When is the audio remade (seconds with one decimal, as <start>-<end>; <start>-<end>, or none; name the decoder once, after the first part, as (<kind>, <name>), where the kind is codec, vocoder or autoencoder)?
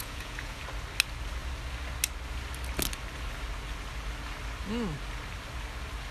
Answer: 0.0-0.6 (vocoder, Vocos)